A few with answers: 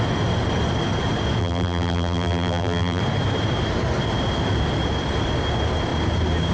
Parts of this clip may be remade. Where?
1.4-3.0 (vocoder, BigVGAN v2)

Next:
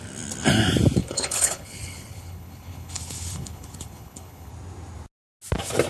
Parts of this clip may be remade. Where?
1.0-4.5 (codec, HILCodec)

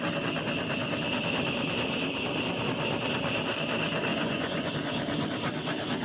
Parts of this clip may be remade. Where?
4.1-4.7 (vocoder, Vocos)

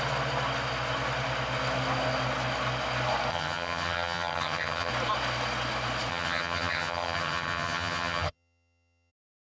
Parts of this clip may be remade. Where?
3.3-4.9 (vocoder, HiFi-GAN); 6.1-9.1